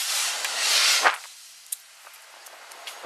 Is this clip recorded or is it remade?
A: recorded